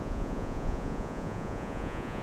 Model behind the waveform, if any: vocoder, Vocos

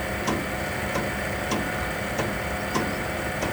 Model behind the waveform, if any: none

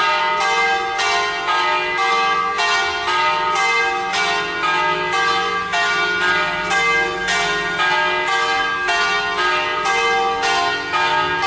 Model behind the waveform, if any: none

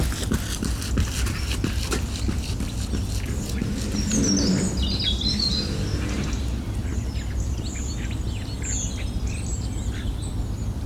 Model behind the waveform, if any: none